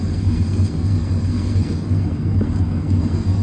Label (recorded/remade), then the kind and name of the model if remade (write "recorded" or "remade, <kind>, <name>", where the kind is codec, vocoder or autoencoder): remade, codec, SNAC